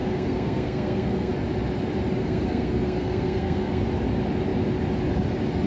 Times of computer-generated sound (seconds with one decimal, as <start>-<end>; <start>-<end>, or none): 0.0-1.3; 2.2-3.8